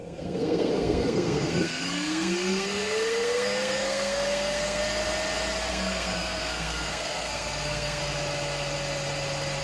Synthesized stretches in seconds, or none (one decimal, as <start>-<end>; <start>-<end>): 0.0-4.8; 5.7-8.0